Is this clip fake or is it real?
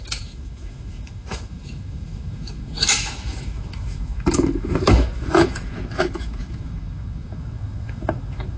fake